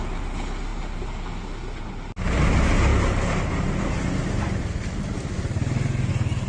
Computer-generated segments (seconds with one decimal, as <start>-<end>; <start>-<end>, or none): none